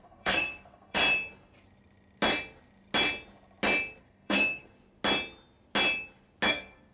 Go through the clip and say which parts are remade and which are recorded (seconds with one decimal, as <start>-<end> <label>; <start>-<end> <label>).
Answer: 0.0-1.0 remade; 1.0-4.0 recorded; 4.0-4.7 remade; 4.7-6.5 recorded; 6.5-6.9 remade